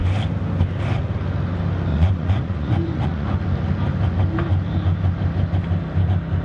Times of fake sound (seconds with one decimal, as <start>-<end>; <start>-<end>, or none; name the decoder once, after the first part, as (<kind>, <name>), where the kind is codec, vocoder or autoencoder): 1.9-3.4 (vocoder, Vocos)